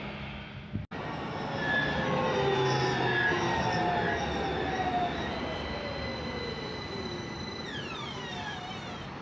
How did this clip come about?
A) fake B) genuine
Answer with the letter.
B